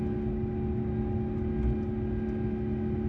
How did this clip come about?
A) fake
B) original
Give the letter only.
B